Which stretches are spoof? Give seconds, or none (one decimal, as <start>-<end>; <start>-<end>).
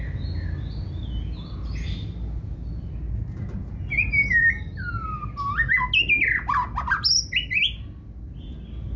none